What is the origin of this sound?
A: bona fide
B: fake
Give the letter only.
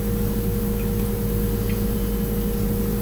A